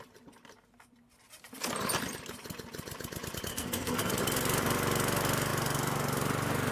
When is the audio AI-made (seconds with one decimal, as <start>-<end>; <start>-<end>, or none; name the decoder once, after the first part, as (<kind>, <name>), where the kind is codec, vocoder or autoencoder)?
3.5-4.1 (codec, SNAC)